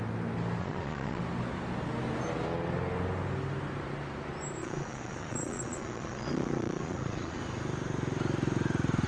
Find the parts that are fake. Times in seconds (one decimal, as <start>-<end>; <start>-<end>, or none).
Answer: 0.6-1.2; 4.6-7.4